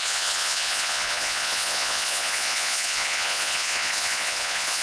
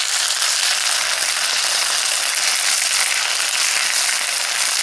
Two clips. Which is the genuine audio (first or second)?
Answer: second